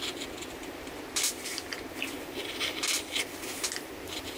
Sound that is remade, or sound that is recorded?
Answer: recorded